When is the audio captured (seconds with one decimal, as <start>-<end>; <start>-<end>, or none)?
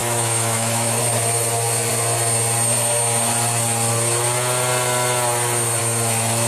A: 1.0-6.5